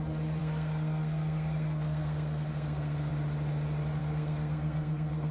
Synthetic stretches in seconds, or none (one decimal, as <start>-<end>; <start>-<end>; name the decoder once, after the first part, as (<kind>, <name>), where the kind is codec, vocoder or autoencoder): 0.4-3.1 (codec, SNAC); 4.0-5.3